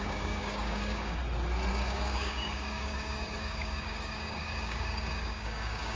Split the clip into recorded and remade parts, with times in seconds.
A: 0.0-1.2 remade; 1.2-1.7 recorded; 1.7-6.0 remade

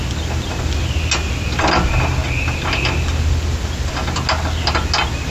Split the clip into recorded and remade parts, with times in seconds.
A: 0.0-5.3 recorded

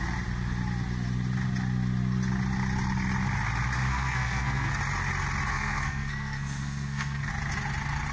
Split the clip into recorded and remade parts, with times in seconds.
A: 0.0-3.9 recorded; 3.9-4.7 remade; 4.7-5.5 recorded; 5.5-7.3 remade; 7.3-8.1 recorded